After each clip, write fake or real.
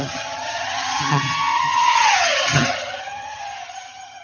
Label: fake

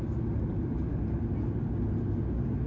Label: real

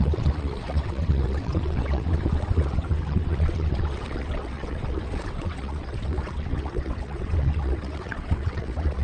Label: fake